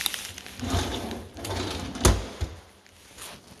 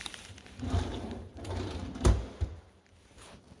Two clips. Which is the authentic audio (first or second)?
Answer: first